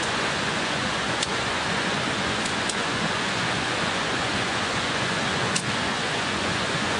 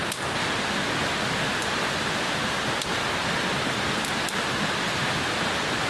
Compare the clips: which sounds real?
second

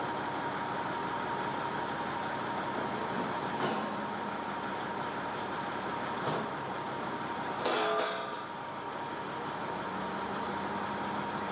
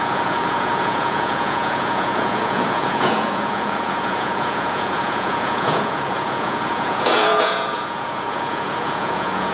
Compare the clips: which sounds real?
first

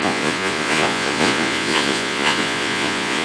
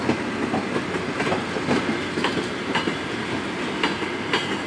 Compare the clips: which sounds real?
second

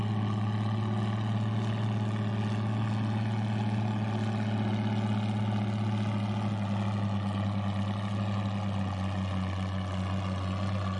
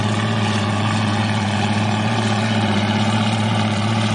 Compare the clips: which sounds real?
first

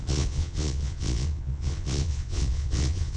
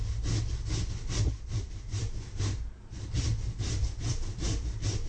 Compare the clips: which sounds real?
second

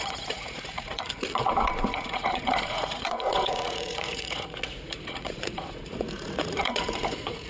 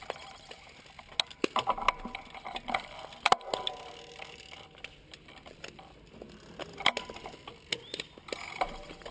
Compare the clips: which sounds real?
second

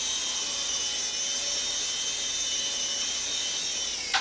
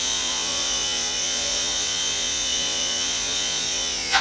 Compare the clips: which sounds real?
first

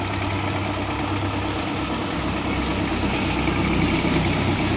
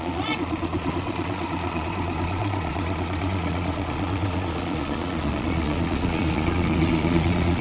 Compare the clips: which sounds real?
first